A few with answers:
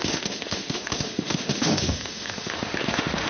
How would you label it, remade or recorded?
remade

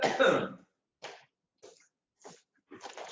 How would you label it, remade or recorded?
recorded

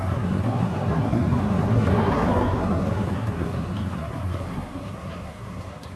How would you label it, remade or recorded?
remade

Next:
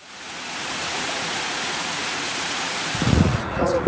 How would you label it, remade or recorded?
remade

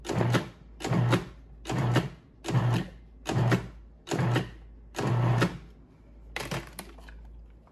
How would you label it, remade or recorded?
recorded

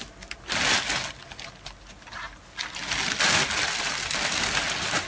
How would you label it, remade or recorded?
recorded